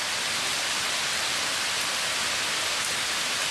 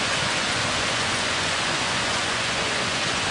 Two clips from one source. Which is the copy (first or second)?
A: second